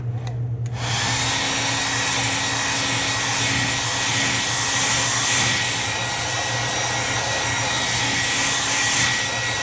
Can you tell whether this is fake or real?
real